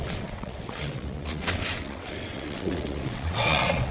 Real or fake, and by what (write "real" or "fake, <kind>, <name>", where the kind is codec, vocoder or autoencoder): fake, vocoder, WaveNeXt